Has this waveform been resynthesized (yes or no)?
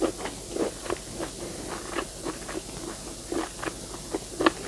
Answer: no